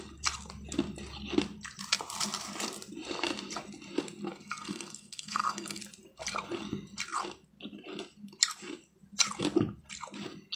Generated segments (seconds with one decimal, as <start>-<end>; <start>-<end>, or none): 4.3-5.8